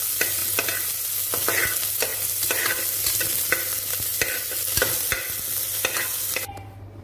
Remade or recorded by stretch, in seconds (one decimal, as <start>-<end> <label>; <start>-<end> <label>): 0.0-2.1 recorded; 2.1-2.8 remade; 2.8-7.0 recorded